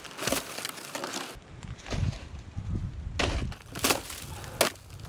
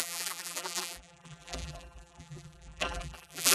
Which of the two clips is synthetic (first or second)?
second